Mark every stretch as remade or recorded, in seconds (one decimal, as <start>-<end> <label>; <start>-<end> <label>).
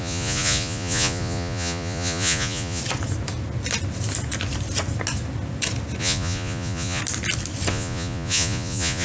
0.0-2.8 remade; 2.8-6.0 recorded; 6.0-7.0 remade; 7.0-7.7 recorded; 7.7-9.0 remade